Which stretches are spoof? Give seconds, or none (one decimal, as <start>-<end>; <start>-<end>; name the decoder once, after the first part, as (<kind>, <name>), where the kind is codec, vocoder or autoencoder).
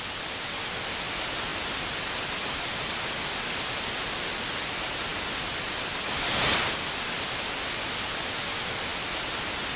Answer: none